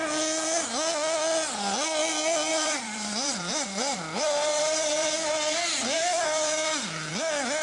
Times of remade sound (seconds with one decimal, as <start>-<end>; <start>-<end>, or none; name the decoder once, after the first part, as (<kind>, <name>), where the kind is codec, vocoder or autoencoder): 2.5-7.1 (vocoder, BigVGAN v2)